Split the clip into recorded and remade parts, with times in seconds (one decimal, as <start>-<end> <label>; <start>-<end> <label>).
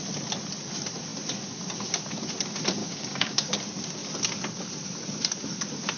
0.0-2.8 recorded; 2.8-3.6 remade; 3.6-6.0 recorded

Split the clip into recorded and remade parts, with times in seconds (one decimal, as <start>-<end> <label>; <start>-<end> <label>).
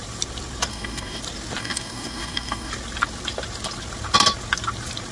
0.0-0.7 recorded; 0.7-1.2 remade; 1.2-1.6 recorded; 1.6-2.7 remade; 2.7-5.1 recorded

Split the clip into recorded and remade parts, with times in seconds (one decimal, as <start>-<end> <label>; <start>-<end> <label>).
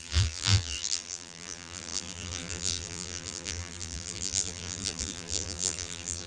0.0-6.3 remade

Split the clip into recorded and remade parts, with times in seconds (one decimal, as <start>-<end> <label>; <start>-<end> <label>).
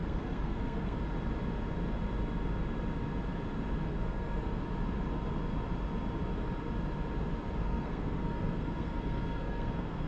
0.0-1.0 remade; 1.0-3.9 recorded; 3.9-4.6 remade; 4.6-7.6 recorded; 7.6-10.1 remade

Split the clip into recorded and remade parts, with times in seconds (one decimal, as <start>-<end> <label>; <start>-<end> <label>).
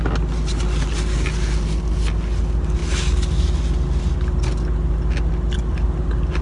0.0-6.4 recorded